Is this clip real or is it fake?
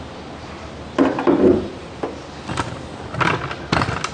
real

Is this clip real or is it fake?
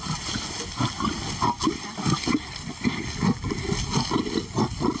real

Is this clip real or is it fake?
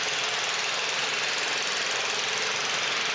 real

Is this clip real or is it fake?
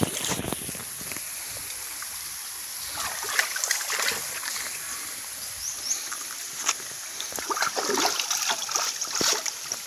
fake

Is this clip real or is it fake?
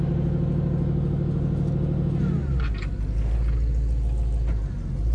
real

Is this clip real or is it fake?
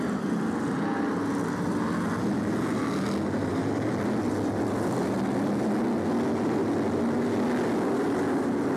real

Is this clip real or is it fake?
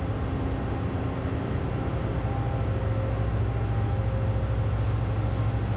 real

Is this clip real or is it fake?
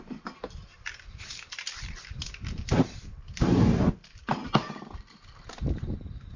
fake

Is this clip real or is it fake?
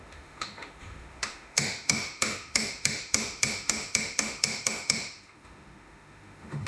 fake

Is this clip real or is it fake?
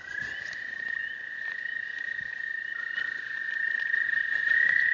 fake